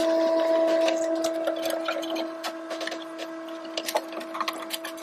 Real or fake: real